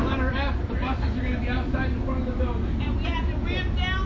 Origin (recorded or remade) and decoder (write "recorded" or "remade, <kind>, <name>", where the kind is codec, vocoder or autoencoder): recorded